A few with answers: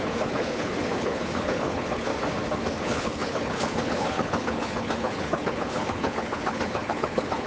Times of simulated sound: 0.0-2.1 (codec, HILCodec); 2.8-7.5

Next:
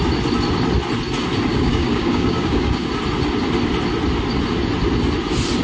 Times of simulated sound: 1.5-2.9 (codec, DAC)